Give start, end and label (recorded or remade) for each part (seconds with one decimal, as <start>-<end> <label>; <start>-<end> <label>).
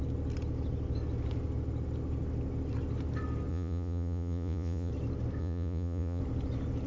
0.0-3.5 recorded; 3.5-4.9 remade; 4.9-5.4 recorded; 5.4-6.2 remade; 6.2-6.9 recorded